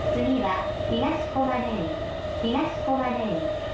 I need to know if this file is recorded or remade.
recorded